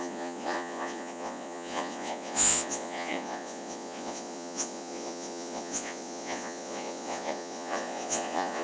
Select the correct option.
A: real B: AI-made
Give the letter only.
B